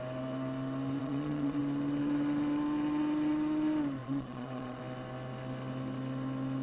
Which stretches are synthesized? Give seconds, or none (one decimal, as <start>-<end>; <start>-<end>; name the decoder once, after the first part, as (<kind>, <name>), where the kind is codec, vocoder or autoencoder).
1.0-1.6 (vocoder, Vocos); 4.0-4.8